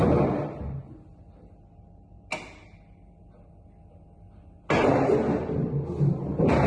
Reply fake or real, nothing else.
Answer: real